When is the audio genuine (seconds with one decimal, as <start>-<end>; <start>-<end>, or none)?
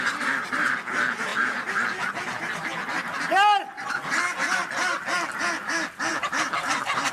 0.0-6.1